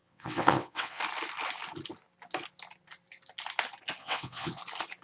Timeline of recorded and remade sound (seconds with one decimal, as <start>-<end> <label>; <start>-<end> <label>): 0.0-1.0 remade; 1.0-4.0 recorded; 4.0-4.6 remade; 4.6-5.0 recorded